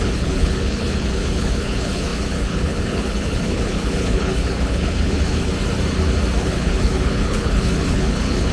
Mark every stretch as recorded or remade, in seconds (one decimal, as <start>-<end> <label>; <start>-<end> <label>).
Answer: 0.0-5.5 remade; 5.5-6.4 recorded; 6.4-8.5 remade